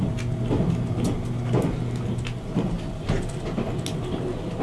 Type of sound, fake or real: real